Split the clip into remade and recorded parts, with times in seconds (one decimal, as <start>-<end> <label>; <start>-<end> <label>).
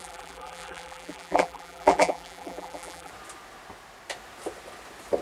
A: 0.0-3.1 remade; 3.1-5.2 recorded